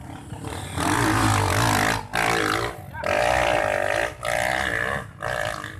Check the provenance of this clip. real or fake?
real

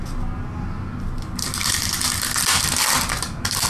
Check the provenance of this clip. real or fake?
real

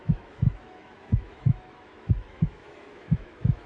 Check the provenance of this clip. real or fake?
fake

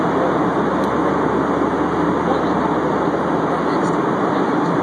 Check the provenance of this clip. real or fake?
real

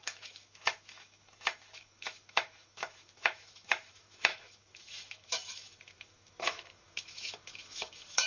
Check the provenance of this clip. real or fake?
fake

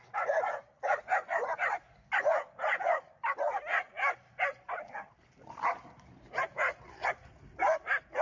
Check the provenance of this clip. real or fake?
real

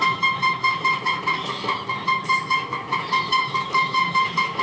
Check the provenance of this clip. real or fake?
fake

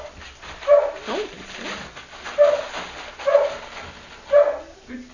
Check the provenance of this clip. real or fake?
real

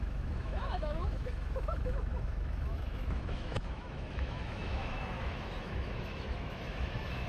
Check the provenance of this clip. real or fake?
fake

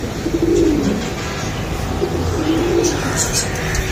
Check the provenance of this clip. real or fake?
real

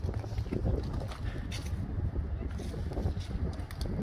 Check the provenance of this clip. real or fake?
real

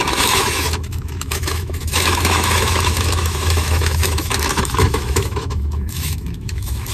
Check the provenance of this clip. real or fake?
fake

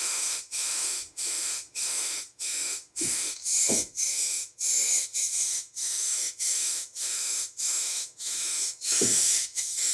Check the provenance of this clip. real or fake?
fake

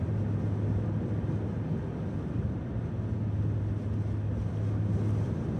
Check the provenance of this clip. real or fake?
real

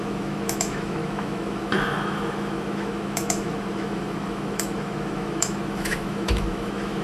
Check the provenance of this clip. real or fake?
fake